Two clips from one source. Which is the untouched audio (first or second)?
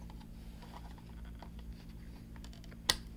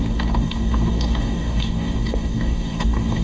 first